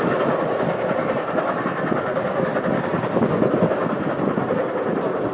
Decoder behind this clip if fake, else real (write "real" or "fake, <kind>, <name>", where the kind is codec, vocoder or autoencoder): real